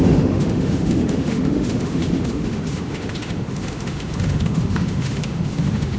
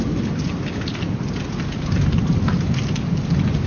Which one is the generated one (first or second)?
first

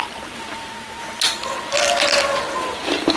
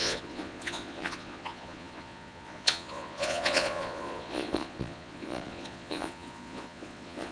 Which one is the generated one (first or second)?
second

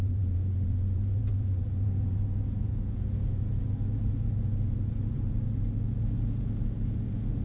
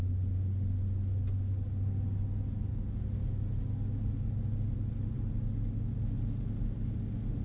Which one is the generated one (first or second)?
first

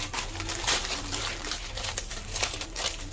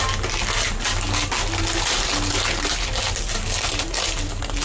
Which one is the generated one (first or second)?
first